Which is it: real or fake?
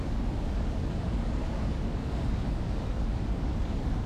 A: fake